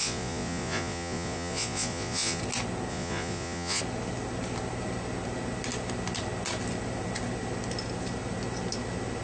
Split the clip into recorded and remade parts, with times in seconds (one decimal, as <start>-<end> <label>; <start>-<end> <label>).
0.0-2.4 remade; 2.4-2.9 recorded; 2.9-3.8 remade; 3.8-9.2 recorded